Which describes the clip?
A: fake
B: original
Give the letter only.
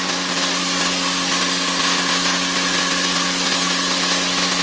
B